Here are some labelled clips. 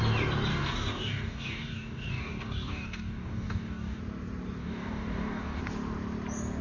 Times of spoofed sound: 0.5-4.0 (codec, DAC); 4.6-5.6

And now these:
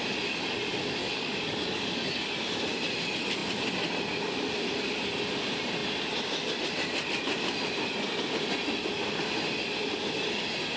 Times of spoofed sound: 1.0-1.9 (codec, DAC)

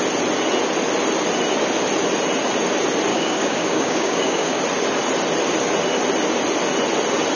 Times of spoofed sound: 3.1-4.6 (codec, DAC)

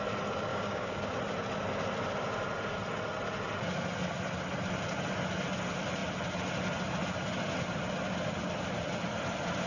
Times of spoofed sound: 0.5-1.0 (codec, DAC)

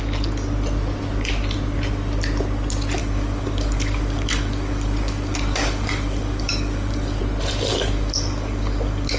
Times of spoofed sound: 3.0-7.2 (codec, DAC); 7.7-9.2

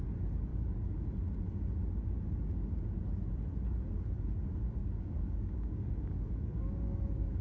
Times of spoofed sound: 0.5-1.0 (codec, DAC); 4.8-7.4

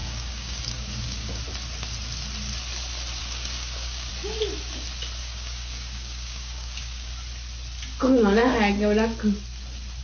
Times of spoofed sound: 0.0-1.4 (codec, DAC); 3.2-4.1; 5.2-7.1

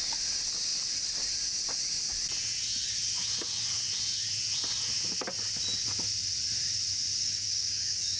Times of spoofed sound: 7.2-8.2 (codec, DAC)